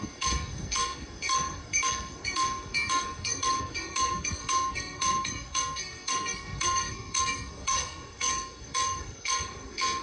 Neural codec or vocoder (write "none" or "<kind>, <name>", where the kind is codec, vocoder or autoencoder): codec, SNAC